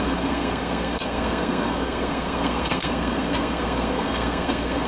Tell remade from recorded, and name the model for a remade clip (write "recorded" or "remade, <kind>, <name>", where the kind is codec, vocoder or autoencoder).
remade, codec, SNAC